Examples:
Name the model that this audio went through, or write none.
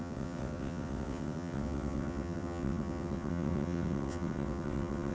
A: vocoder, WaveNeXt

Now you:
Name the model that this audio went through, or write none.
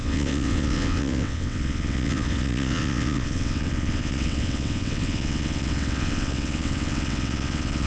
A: vocoder, WaveNeXt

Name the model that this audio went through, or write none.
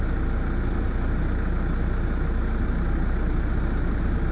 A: none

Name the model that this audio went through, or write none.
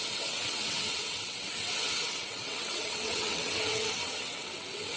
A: vocoder, WaveNeXt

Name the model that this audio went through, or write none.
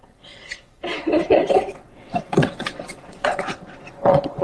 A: vocoder, WaveNeXt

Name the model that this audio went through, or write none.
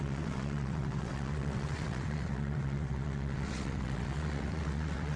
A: vocoder, WaveNeXt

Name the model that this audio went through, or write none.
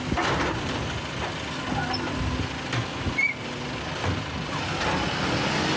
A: none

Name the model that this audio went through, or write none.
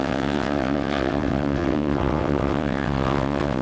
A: vocoder, WaveNeXt